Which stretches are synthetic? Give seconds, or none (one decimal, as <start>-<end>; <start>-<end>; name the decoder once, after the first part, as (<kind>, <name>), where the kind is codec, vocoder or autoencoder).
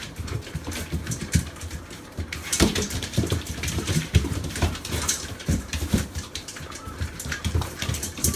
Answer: 0.0-8.4 (vocoder, BigVGAN v2)